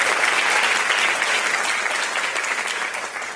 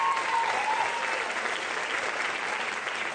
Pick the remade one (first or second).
second